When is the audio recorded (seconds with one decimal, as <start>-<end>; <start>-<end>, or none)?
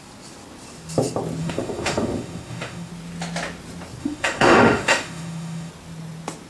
0.0-1.4; 2.9-4.0; 5.7-6.5